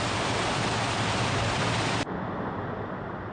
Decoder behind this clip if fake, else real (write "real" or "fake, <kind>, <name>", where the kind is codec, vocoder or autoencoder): real